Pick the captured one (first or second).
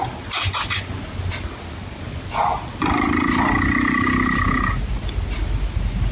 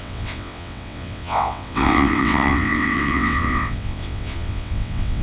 first